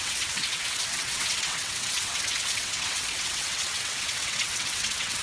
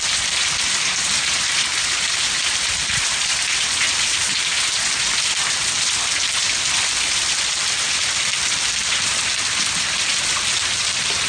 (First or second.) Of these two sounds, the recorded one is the second